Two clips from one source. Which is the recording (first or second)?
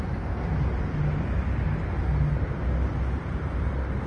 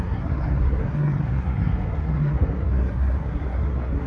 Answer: first